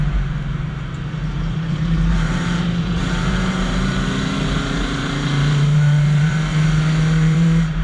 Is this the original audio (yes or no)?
no